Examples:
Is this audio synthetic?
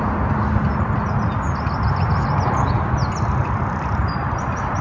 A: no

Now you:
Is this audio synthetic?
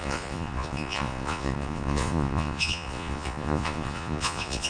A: yes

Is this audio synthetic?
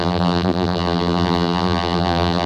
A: yes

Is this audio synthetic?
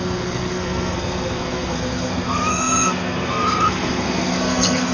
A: yes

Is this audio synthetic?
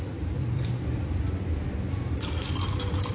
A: yes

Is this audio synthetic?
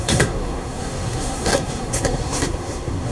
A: yes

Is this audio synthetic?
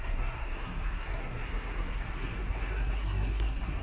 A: yes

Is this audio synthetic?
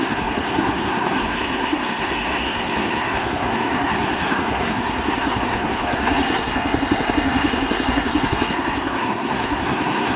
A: yes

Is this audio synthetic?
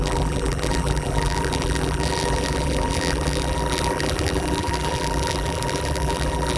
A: yes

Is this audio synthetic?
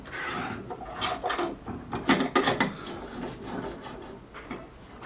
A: no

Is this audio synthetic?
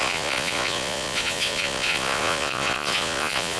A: yes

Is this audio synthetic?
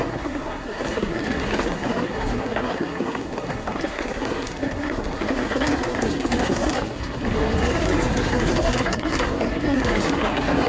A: yes